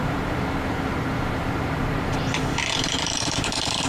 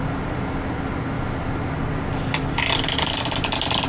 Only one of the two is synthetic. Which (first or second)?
first